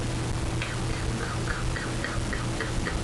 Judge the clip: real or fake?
real